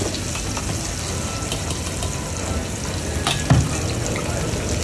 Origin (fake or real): real